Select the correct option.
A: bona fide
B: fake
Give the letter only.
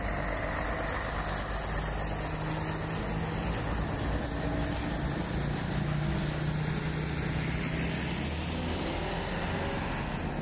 A